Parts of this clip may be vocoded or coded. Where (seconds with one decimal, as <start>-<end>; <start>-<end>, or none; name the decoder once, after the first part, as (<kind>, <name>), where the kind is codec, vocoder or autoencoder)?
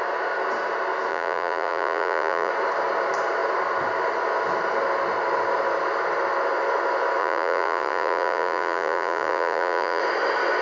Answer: 1.1-2.5 (vocoder, Vocos); 7.2-10.0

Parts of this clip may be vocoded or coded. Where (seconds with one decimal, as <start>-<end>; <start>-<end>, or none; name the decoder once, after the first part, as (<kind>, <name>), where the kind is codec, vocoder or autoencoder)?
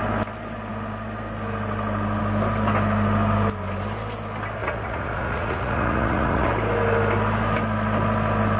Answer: 4.6-6.5 (vocoder, Vocos)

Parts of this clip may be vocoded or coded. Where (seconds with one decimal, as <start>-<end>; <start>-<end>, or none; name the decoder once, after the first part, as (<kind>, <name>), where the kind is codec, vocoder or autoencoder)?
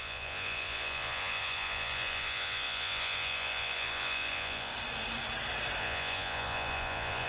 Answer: 0.0-4.7 (vocoder, Vocos); 5.8-7.3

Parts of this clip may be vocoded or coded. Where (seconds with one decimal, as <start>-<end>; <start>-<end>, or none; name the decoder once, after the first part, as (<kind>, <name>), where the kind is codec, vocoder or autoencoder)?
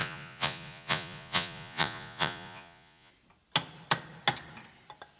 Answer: 0.0-3.1 (vocoder, Vocos)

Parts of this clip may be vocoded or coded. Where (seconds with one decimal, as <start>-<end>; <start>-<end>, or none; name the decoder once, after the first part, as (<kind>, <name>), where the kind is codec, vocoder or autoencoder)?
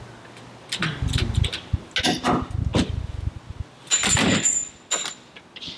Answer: none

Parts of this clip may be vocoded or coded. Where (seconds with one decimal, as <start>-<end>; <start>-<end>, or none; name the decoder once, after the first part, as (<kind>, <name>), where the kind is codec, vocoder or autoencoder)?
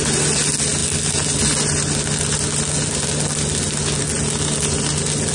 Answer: none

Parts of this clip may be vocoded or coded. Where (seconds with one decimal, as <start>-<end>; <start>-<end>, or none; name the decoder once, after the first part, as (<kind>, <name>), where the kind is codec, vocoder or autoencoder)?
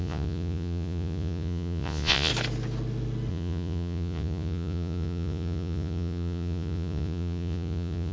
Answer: 0.0-2.3 (vocoder, Vocos); 3.3-8.1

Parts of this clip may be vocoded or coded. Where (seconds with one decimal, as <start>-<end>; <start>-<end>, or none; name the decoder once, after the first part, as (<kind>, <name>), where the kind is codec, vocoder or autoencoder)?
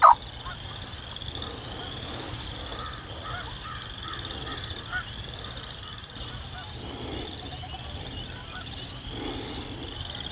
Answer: none